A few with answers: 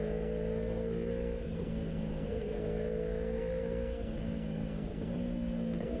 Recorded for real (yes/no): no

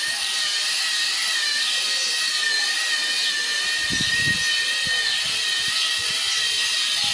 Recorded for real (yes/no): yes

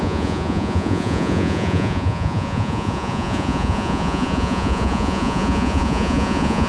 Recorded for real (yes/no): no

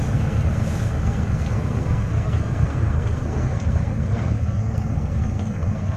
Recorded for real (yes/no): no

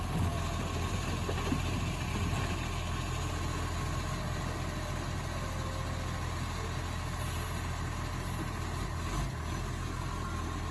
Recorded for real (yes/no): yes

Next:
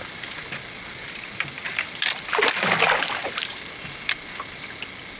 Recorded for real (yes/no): yes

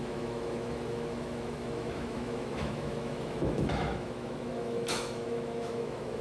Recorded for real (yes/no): no